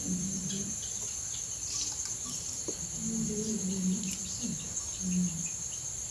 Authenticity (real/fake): real